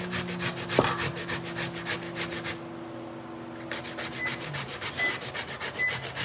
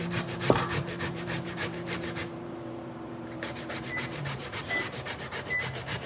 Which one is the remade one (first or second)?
second